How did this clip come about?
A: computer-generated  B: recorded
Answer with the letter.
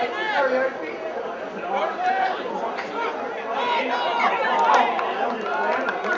B